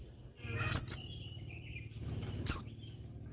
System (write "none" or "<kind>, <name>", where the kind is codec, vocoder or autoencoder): none